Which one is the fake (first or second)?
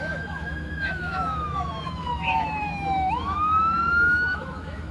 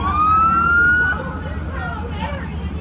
first